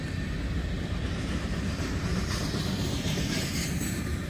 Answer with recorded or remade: remade